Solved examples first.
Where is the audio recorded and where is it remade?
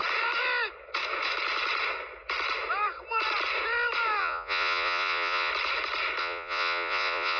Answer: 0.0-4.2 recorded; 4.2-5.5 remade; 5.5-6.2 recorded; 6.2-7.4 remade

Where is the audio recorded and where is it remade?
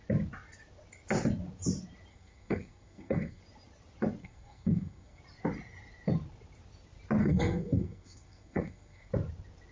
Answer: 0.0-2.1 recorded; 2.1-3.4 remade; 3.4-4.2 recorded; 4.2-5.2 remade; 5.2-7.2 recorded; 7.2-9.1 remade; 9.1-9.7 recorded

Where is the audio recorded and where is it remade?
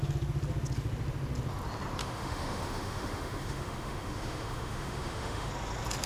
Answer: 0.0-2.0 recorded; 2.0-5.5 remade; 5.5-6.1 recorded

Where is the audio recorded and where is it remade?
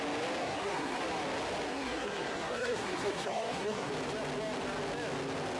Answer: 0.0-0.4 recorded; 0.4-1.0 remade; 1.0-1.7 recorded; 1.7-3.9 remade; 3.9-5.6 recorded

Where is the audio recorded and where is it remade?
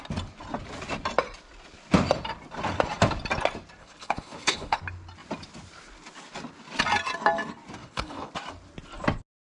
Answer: 0.0-3.8 recorded; 3.8-4.8 remade; 4.8-7.8 recorded; 7.8-8.3 remade; 8.3-9.5 recorded